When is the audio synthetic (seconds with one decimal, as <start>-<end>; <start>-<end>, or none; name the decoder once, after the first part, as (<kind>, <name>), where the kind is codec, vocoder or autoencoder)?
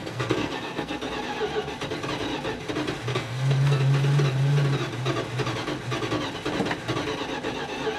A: 0.0-1.1 (codec, SNAC); 3.1-3.8